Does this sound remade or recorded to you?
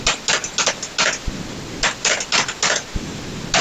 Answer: recorded